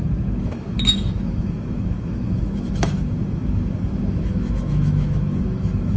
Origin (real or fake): fake